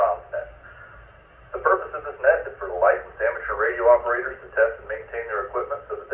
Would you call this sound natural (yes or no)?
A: yes